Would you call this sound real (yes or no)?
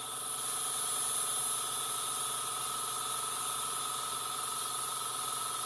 yes